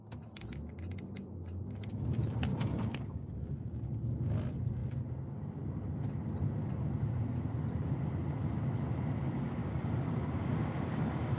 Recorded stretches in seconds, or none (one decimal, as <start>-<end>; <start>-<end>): 0.0-2.5; 3.3-9.6